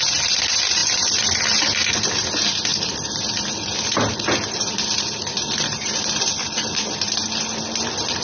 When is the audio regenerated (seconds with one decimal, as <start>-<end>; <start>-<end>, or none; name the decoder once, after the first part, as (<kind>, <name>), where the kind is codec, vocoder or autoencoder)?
none

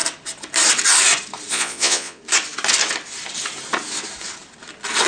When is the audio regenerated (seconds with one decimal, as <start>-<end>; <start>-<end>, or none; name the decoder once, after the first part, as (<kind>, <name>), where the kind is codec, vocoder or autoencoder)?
1.5-2.2 (vocoder, Vocos)

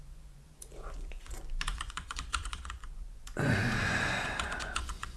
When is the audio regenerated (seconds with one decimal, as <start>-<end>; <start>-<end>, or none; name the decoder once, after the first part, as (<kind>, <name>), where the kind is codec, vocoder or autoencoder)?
0.0-5.2 (vocoder, Vocos)

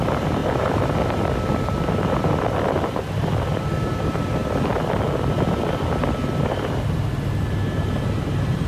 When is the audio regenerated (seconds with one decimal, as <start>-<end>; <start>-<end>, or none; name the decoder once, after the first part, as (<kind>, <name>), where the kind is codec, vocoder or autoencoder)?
none

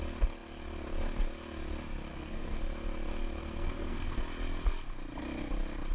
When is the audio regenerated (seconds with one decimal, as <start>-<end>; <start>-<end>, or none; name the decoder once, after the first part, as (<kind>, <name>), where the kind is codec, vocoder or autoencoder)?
2.1-2.6 (codec, SNAC); 3.4-4.2

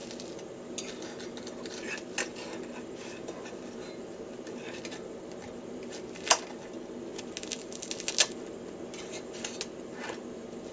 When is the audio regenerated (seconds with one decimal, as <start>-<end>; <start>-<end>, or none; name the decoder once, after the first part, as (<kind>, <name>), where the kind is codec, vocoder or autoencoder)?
none

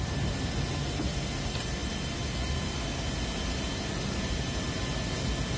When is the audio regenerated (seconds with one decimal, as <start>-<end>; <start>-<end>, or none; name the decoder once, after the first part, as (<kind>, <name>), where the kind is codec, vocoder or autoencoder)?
none

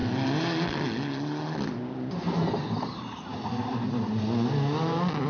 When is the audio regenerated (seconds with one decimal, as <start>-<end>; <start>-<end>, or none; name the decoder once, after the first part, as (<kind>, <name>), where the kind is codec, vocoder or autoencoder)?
none